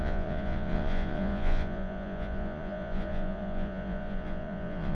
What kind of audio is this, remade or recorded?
remade